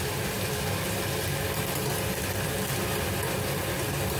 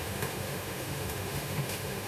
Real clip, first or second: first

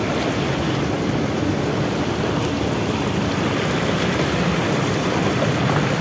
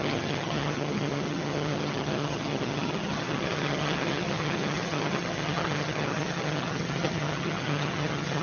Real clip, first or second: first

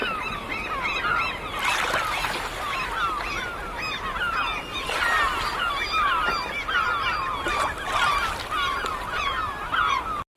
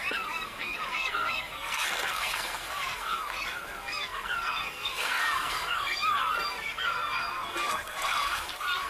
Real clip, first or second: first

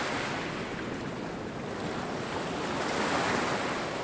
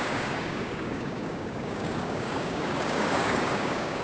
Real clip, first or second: first